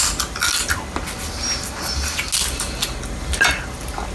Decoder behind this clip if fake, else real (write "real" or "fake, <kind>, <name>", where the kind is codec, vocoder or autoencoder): real